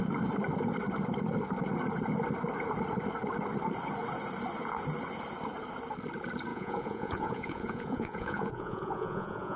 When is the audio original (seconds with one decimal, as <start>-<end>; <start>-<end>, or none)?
0.0-6.5